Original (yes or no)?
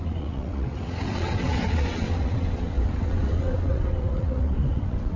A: no